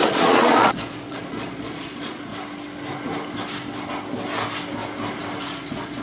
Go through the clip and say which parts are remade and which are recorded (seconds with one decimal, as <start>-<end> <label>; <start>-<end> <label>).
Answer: 0.0-2.3 remade; 2.3-5.4 recorded; 5.4-6.0 remade